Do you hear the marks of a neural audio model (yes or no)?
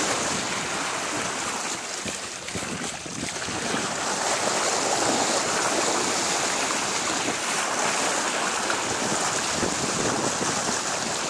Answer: no